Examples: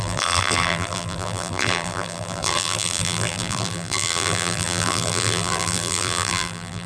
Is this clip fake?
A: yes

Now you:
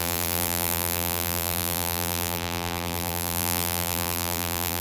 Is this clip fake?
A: yes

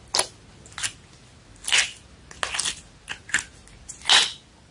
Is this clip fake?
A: no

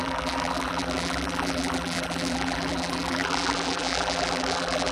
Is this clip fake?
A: yes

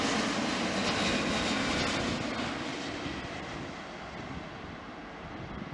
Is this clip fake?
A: no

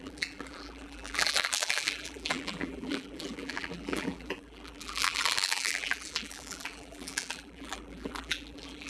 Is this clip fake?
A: yes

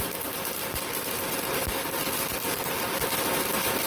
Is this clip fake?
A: yes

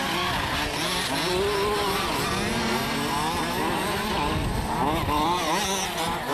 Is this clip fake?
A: no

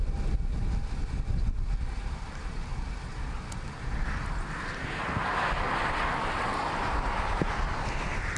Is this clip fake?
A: no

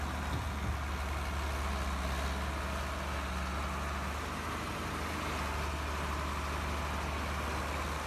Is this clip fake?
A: no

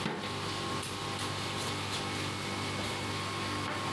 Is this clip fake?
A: no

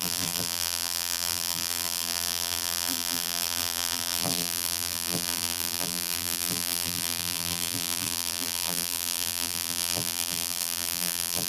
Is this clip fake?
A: yes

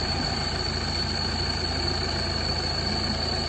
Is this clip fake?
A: yes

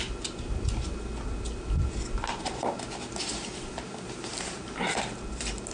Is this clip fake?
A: no